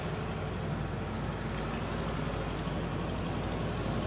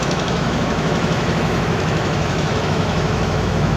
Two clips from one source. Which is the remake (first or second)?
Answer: second